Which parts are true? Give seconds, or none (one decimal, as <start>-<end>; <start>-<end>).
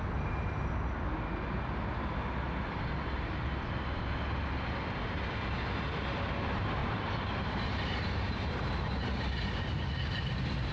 0.0-6.8; 9.6-10.7